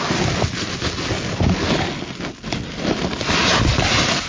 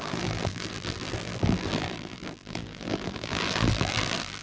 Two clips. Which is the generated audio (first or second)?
second